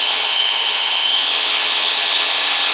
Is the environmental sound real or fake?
fake